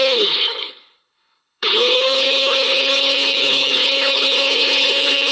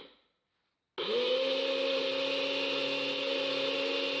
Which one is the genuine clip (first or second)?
second